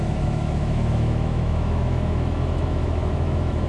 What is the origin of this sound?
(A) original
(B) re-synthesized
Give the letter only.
B